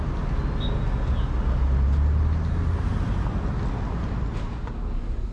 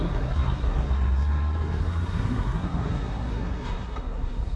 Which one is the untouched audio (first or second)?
first